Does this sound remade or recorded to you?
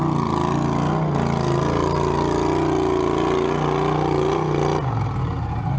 recorded